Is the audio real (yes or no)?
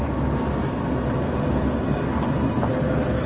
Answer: yes